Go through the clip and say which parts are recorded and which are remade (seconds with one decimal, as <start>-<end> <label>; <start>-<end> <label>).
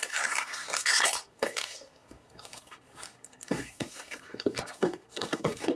0.0-5.8 remade